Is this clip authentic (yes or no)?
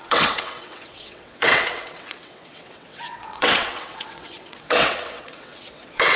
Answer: no